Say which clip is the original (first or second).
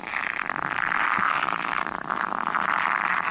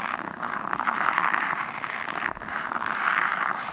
first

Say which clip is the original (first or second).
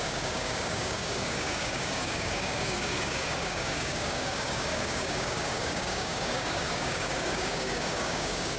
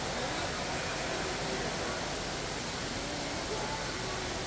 second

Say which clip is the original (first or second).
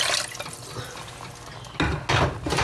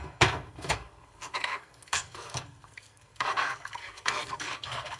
first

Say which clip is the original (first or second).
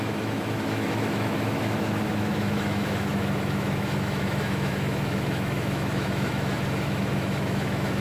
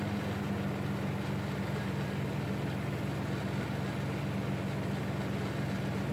second